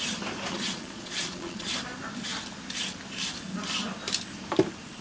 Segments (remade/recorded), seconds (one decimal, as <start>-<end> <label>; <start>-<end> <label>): 0.0-0.5 recorded; 0.5-1.7 remade; 1.7-5.0 recorded